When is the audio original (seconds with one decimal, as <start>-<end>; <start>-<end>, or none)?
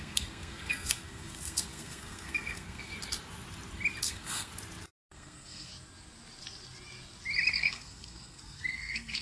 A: 2.9-4.0; 4.5-5.1; 5.7-7.5